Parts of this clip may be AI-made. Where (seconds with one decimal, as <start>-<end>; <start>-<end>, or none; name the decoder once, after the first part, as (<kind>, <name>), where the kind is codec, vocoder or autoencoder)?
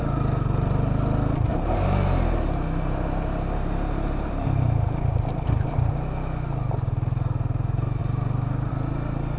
1.5-5.9 (vocoder, BigVGAN v2)